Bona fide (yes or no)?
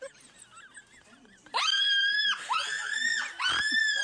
yes